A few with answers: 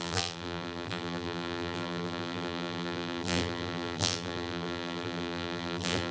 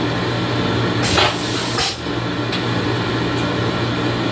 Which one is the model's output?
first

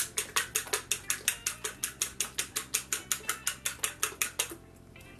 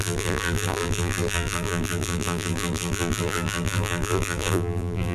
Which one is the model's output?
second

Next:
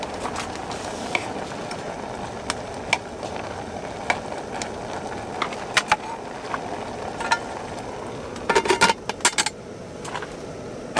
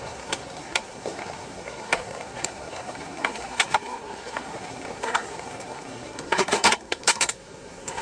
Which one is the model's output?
second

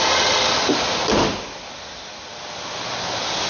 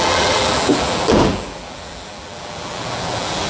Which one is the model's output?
second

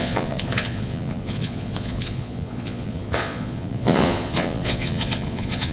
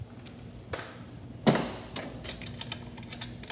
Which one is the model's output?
first